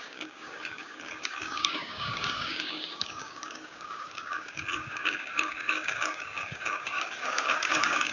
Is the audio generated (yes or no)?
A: yes